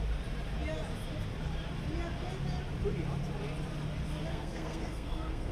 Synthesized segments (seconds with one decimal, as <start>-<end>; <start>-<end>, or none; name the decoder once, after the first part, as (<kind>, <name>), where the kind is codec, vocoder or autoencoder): 4.3-5.5 (codec, SNAC)